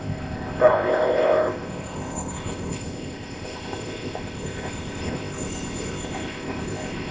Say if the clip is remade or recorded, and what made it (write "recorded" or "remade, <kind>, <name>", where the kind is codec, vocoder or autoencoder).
remade, codec, ZipCodec